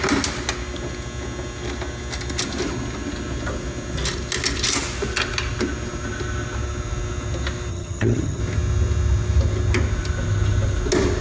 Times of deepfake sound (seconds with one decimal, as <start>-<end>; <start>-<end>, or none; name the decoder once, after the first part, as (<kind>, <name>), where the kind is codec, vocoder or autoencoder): 7.7-8.4 (vocoder, HiFi-GAN)